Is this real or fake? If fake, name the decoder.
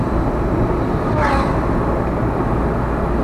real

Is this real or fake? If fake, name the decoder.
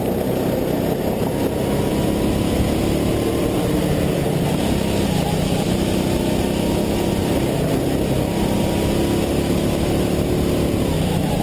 real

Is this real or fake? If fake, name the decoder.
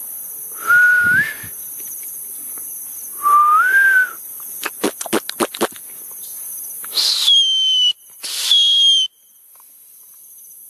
real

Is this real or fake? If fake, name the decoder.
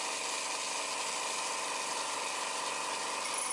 real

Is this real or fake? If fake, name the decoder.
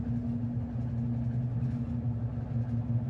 real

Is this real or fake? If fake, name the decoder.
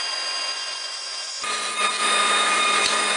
fake, vocoder, Vocos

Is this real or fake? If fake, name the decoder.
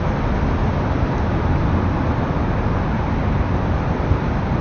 real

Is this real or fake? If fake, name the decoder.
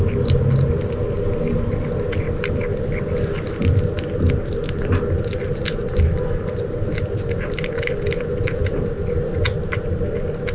real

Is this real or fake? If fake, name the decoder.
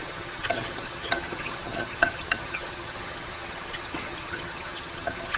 fake, vocoder, HiFi-GAN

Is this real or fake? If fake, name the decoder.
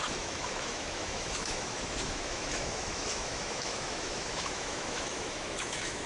fake, autoencoder, DAC-VAE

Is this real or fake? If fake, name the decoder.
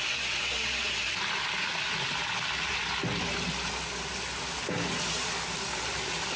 real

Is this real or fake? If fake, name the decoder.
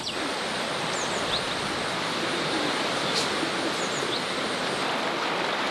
real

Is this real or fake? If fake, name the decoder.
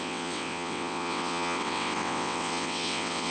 fake, vocoder, WaveNeXt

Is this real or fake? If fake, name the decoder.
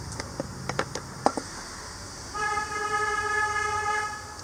real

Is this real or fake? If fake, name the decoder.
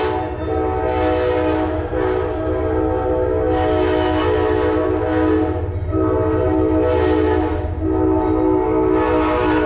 real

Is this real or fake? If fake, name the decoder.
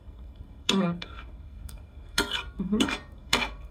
fake, codec, SNAC